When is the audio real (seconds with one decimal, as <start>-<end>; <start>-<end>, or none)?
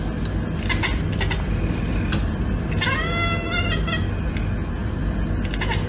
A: 0.0-0.7; 2.8-4.8; 5.5-5.9